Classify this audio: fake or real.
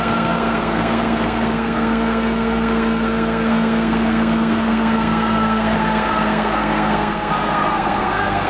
fake